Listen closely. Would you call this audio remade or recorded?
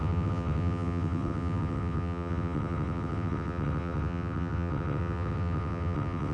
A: remade